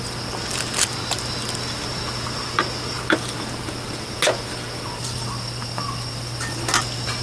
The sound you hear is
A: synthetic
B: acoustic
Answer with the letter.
B